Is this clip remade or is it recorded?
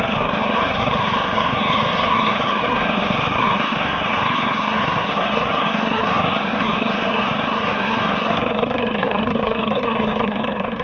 remade